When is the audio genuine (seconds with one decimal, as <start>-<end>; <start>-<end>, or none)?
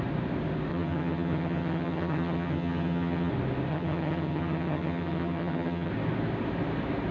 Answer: 0.0-0.7; 3.3-3.7; 5.9-7.1